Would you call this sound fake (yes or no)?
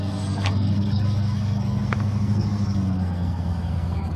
yes